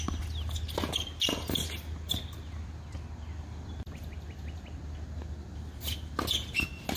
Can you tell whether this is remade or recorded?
recorded